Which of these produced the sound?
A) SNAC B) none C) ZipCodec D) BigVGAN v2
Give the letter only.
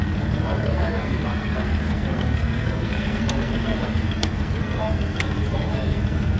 A